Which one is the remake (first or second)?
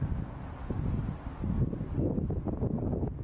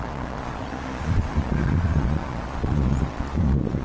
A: second